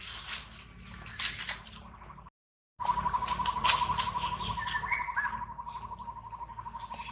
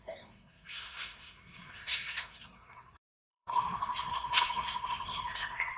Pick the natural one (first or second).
first